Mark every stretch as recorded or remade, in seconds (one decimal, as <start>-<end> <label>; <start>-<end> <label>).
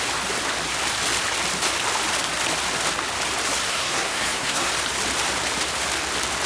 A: 0.0-3.7 recorded; 3.7-4.7 remade; 4.7-6.5 recorded